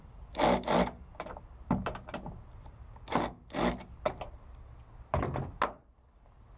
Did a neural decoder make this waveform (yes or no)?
no